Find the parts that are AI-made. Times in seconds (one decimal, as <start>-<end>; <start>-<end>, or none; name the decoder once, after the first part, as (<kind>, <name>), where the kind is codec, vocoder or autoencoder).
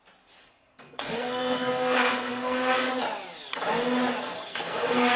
0.4-2.6 (codec, SNAC); 4.2-5.2